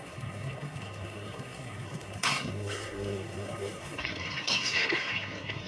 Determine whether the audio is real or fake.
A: fake